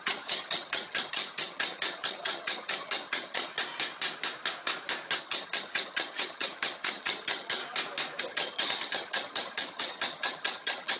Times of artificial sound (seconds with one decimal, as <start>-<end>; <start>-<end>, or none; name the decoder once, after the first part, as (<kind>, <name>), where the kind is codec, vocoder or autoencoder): 0.0-3.5 (vocoder, HiFi-GAN); 5.2-7.6; 8.2-11.0